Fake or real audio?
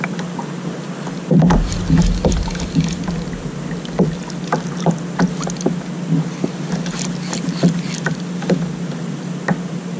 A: real